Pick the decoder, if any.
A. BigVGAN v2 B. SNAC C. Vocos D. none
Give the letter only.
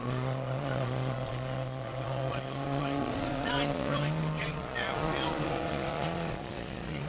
C